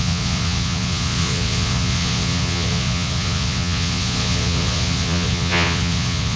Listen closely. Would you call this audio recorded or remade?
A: remade